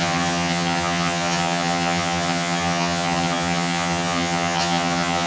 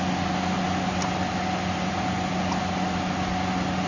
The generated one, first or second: first